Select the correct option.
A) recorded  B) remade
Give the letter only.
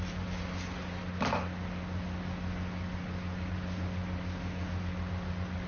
A